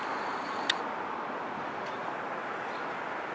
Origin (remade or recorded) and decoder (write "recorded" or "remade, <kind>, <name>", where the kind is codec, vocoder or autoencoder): recorded